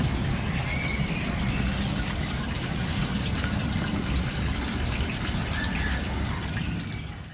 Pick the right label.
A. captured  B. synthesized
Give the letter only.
A